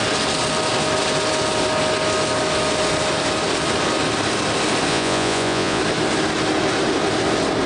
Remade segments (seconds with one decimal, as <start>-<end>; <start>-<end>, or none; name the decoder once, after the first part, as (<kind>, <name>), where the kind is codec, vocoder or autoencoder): 4.9-5.8 (vocoder, Vocos)